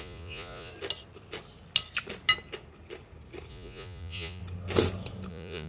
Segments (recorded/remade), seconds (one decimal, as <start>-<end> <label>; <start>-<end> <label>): 0.0-0.7 remade; 0.7-3.5 recorded; 3.5-4.4 remade; 4.4-5.3 recorded; 5.3-5.7 remade